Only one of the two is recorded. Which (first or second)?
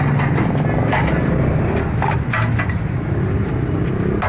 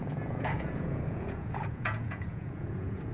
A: first